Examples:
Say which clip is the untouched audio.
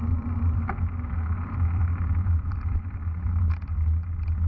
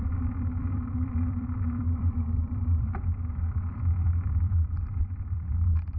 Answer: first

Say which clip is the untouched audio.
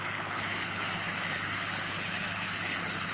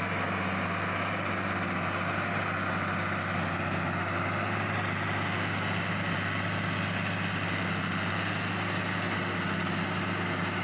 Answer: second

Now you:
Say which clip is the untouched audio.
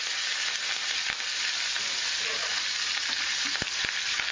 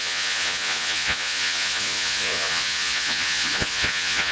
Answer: first